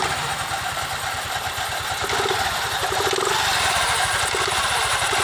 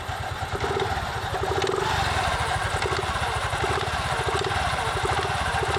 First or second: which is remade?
first